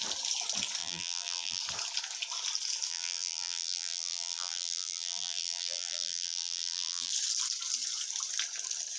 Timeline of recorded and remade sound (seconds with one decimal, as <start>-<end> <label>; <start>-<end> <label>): 0.0-0.8 recorded; 0.8-1.6 remade; 1.6-2.9 recorded; 2.9-7.1 remade; 7.1-9.0 recorded